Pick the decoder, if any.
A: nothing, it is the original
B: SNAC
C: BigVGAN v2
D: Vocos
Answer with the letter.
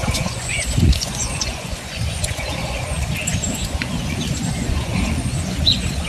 D